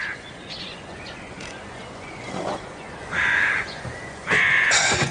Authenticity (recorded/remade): remade